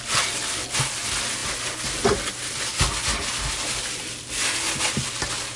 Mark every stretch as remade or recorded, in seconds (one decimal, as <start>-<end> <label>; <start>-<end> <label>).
0.0-5.6 recorded